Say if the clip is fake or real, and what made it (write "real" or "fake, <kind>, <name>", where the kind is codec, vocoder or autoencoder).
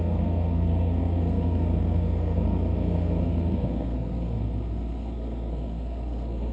fake, codec, SNAC